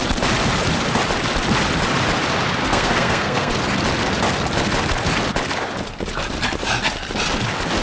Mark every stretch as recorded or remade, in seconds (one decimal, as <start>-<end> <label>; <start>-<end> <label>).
0.0-2.6 recorded; 2.6-3.5 remade; 3.5-7.8 recorded